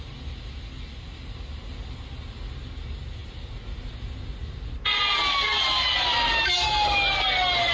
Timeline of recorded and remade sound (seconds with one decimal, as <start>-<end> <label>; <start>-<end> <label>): 0.0-7.7 recorded

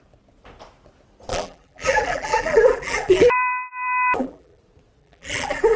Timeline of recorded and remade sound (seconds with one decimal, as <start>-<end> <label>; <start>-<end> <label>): 0.0-1.3 recorded; 1.3-4.6 remade; 4.6-5.0 recorded; 5.0-5.8 remade

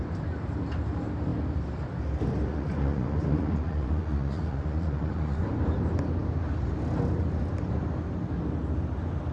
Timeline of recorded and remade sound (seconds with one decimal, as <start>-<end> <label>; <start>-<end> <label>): 0.0-2.5 recorded; 2.5-5.5 remade; 5.5-9.3 recorded